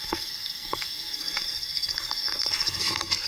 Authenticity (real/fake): fake